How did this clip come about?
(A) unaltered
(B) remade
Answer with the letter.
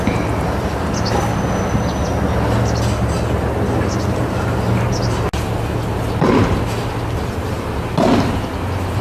A